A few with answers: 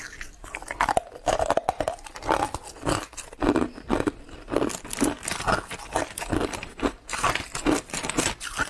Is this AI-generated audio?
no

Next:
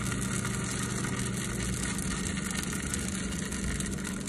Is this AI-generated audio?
no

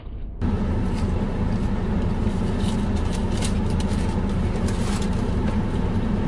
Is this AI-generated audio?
no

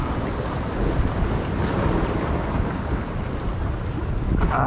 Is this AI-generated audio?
no